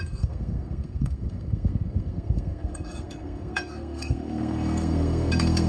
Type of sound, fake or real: fake